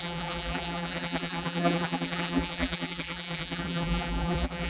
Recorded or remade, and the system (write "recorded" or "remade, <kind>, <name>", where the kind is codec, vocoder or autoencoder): remade, vocoder, BigVGAN v2